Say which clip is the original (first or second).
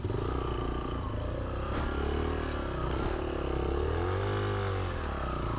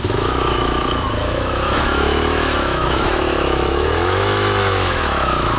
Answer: first